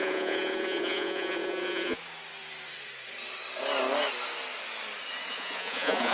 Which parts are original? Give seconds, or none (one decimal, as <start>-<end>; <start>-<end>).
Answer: 2.0-5.3